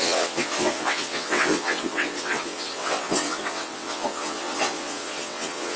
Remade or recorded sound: remade